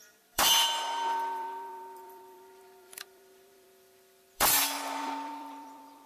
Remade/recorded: remade